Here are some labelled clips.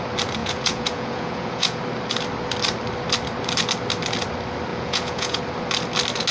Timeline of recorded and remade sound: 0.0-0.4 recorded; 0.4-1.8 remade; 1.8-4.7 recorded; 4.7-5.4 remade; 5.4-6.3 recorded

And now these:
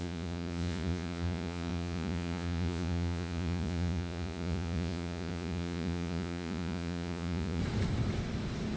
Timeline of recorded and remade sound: 0.0-7.6 remade; 7.6-8.8 recorded

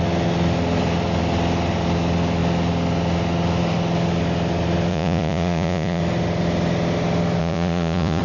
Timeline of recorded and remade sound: 0.0-4.9 recorded; 4.9-6.0 remade; 6.0-7.4 recorded; 7.4-8.2 remade

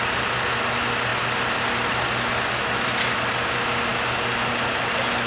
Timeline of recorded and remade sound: 0.0-5.3 recorded

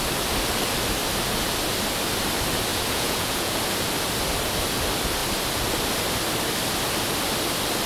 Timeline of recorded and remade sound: 0.0-2.7 recorded; 2.7-3.6 remade; 3.6-7.9 recorded

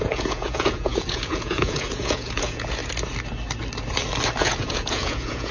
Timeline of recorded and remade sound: 0.0-2.8 remade; 2.8-4.4 recorded; 4.4-5.5 remade